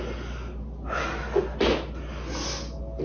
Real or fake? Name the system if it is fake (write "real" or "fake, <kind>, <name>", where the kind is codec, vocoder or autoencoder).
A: real